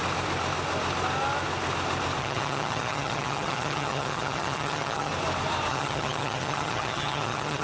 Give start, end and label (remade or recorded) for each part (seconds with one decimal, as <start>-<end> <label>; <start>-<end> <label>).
0.0-2.2 recorded; 2.2-5.1 remade; 5.1-5.7 recorded; 5.7-7.6 remade